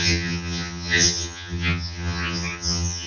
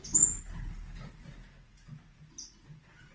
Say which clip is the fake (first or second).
first